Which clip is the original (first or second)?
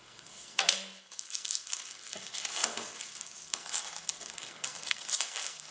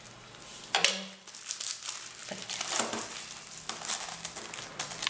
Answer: second